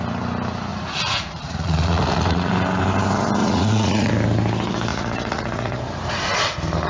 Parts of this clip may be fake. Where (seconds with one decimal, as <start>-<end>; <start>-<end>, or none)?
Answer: 0.7-2.5; 3.4-4.1; 4.9-5.8